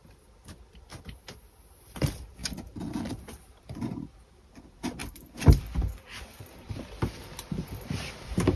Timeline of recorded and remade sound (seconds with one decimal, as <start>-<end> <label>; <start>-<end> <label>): 0.0-0.9 remade; 0.9-1.8 recorded; 1.8-8.6 remade